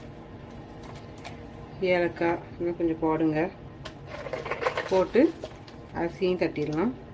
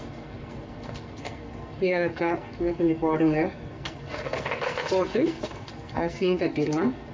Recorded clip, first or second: first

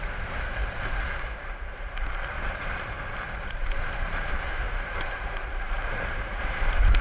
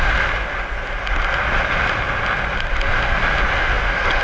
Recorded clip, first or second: second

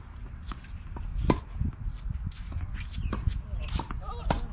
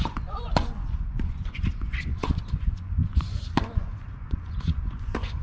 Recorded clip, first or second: first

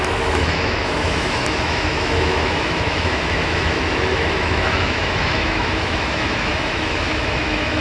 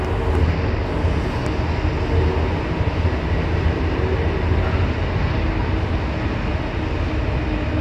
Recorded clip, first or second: second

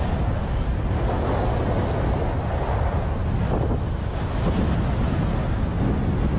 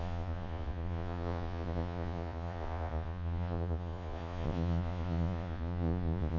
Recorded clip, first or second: first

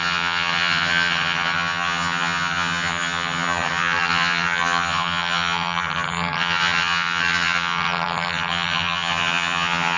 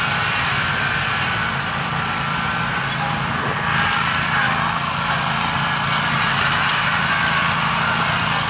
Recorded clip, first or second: second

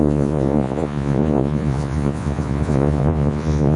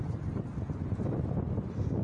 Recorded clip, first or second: second